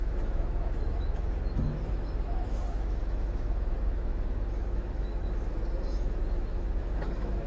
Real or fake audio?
fake